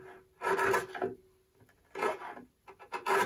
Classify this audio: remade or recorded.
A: recorded